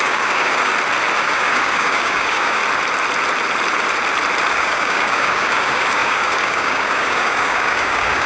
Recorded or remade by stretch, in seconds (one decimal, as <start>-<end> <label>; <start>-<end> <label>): 0.0-0.7 remade; 0.7-1.2 recorded; 1.2-2.6 remade; 2.6-4.5 recorded; 4.5-8.3 remade